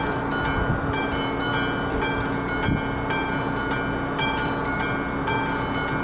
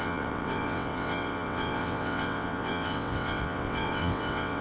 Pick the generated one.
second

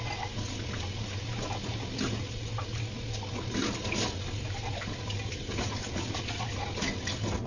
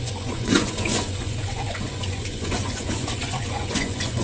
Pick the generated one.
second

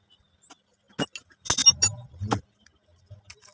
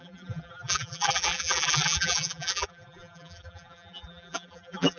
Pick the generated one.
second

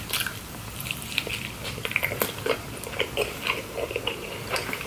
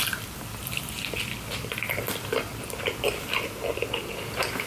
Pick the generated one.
first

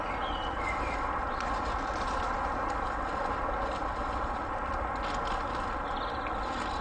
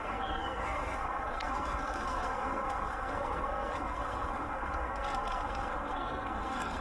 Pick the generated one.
second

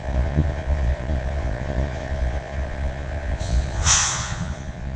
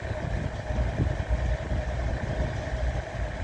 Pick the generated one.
first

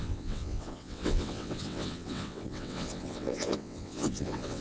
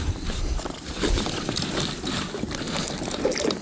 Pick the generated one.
first